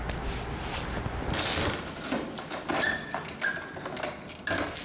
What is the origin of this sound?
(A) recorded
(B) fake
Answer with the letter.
A